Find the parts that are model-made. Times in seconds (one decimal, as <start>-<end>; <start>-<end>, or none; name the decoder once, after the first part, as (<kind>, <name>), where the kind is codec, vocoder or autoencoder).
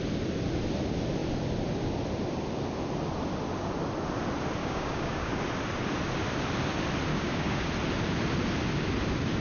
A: 4.6-5.3 (codec, DAC); 7.1-7.7